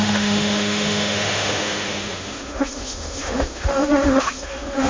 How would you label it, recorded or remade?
remade